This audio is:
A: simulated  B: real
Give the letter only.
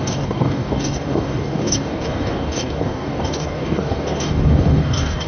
A